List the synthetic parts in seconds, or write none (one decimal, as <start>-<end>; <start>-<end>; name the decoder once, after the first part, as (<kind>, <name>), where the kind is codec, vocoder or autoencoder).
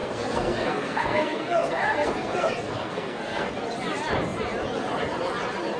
0.0-3.5 (codec, SNAC)